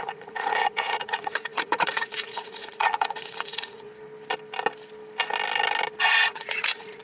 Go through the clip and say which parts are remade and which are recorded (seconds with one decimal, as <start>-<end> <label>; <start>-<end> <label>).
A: 0.0-3.9 remade; 3.9-6.3 recorded; 6.3-7.0 remade